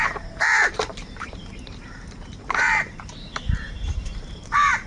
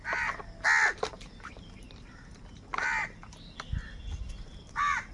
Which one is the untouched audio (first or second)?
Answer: second